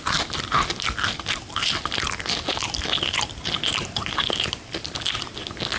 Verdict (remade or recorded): recorded